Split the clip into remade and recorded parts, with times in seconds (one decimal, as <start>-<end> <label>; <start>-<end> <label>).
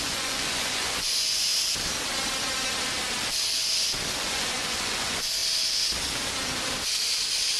0.0-1.5 remade; 1.5-4.2 recorded; 4.2-5.4 remade; 5.4-7.6 recorded